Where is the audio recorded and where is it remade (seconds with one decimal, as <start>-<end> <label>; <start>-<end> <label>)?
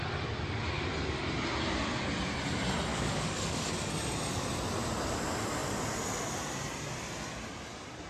0.0-2.9 recorded; 2.9-3.9 remade; 3.9-8.1 recorded